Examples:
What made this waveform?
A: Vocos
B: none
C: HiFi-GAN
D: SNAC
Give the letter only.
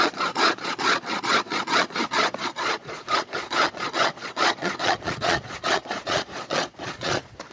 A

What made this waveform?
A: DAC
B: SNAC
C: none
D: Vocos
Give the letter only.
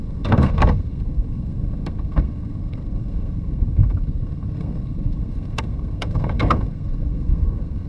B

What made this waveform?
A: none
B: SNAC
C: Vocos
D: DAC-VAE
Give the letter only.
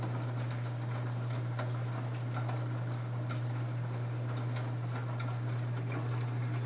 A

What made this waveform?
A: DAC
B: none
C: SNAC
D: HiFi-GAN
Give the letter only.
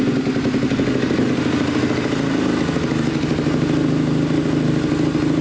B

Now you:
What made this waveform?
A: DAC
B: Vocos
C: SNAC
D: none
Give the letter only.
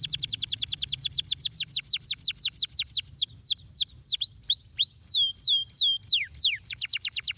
D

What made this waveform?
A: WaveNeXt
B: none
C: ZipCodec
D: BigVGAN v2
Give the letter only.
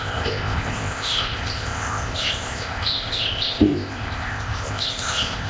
C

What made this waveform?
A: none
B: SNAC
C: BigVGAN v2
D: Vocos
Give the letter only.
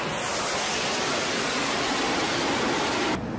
A